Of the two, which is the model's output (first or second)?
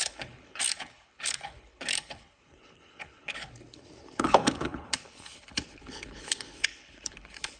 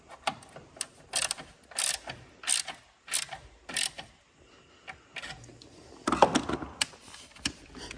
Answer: first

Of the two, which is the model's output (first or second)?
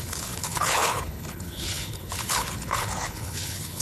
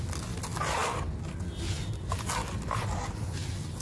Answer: first